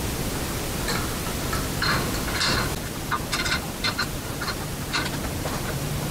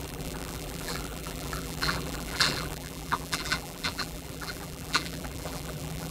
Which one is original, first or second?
first